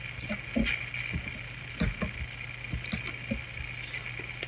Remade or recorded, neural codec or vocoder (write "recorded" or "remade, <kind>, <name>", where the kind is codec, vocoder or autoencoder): recorded